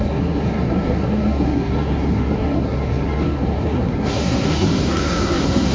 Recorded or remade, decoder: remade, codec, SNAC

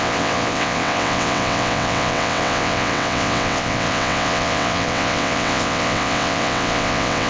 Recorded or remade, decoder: remade, vocoder, WaveNeXt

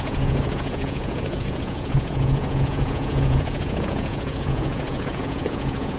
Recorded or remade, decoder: remade, vocoder, Vocos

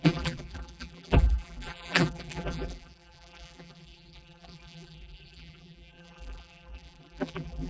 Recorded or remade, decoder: remade, vocoder, BigVGAN v2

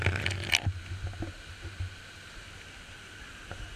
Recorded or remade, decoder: recorded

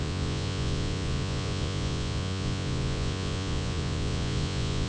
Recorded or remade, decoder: remade, vocoder, Vocos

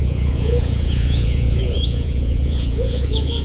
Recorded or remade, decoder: remade, vocoder, Vocos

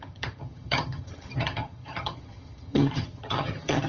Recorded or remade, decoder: remade, vocoder, HiFi-GAN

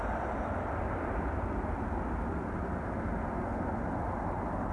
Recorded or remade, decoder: recorded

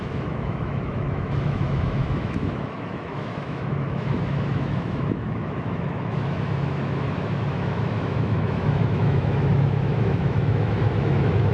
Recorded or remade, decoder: remade, autoencoder, DAC-VAE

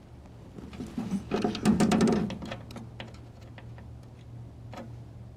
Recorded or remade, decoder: recorded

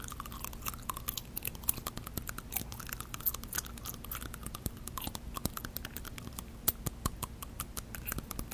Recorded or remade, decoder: recorded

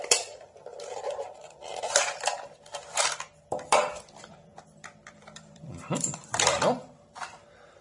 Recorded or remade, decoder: remade, vocoder, BigVGAN v2